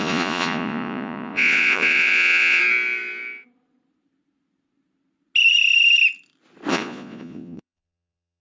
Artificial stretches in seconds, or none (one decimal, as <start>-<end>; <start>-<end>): 0.0-2.6; 6.7-8.4